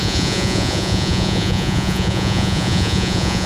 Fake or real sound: fake